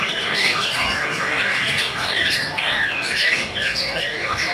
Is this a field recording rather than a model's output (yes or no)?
no